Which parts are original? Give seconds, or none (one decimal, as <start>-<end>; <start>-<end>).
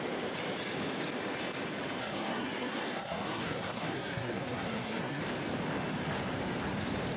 0.0-2.0; 5.2-7.2